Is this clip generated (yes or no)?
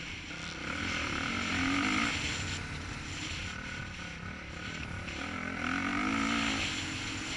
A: no